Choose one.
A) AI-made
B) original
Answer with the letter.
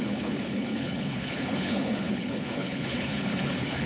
A